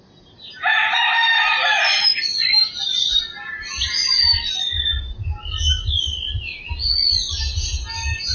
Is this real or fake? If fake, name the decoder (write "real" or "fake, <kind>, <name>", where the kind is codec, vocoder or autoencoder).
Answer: real